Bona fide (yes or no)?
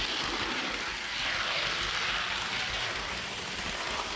no